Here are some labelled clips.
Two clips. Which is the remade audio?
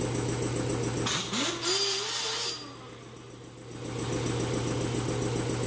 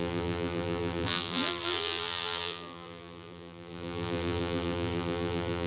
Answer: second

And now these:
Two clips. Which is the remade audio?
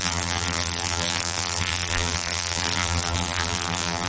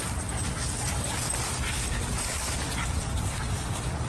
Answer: first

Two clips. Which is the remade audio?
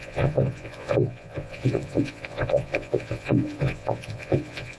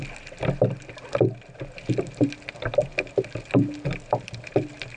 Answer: first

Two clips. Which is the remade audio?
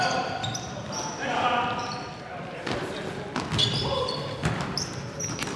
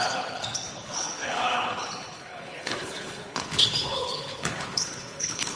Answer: second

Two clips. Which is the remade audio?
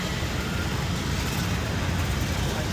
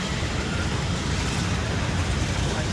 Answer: second